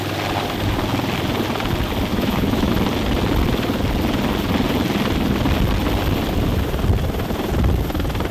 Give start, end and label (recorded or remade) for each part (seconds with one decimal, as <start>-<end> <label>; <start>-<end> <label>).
0.0-2.1 recorded; 2.1-2.7 remade; 2.7-8.3 recorded

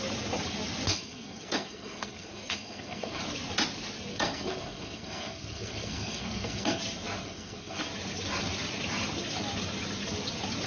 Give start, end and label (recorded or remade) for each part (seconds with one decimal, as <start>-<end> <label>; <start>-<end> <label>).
0.0-0.9 recorded; 0.9-3.2 remade; 3.2-4.1 recorded; 4.1-6.8 remade; 6.8-7.2 recorded; 7.2-7.8 remade; 7.8-10.7 recorded

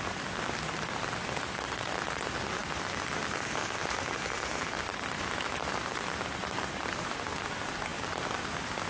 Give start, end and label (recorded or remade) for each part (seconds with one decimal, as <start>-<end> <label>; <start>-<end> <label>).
0.0-8.9 recorded

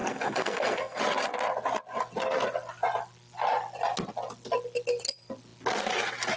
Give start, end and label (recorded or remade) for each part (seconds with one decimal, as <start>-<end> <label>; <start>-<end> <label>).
0.0-1.0 remade; 1.0-6.4 recorded

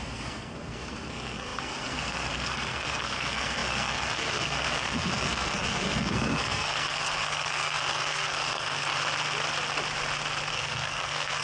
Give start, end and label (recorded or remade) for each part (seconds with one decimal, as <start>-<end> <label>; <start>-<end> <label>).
0.0-8.9 remade; 8.9-10.5 recorded; 10.5-11.4 remade

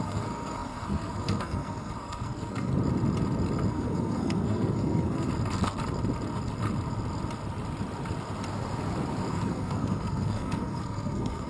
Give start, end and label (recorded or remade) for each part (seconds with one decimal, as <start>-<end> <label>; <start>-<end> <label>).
0.0-2.7 remade; 2.7-3.7 recorded; 3.7-5.3 remade; 5.3-9.3 recorded; 9.3-11.5 remade

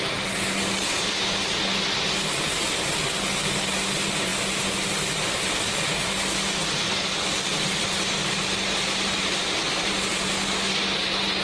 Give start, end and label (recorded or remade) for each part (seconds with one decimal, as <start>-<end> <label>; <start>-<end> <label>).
0.0-11.4 recorded

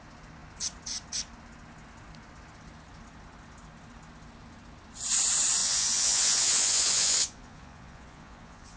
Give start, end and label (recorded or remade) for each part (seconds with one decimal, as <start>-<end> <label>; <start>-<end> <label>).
0.0-5.6 recorded; 5.6-8.8 remade